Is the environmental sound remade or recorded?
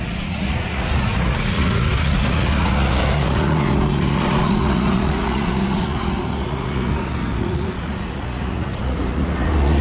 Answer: remade